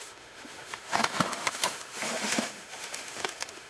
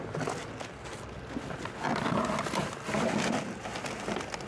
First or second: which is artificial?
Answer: first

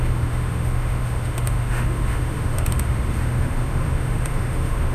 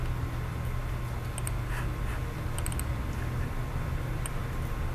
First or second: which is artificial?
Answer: first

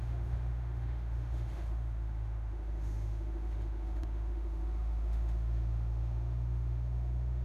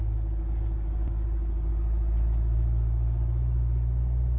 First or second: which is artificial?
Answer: first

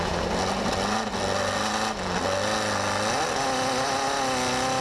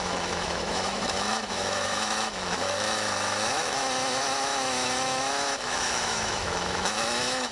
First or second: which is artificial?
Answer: second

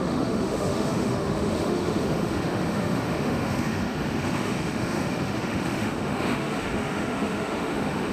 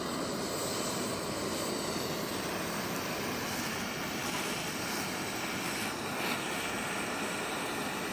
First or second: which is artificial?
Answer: first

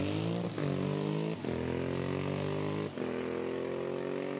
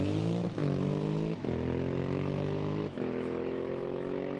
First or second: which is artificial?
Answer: second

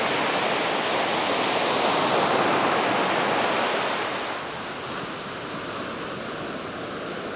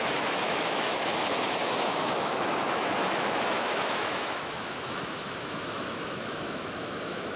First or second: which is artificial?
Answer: second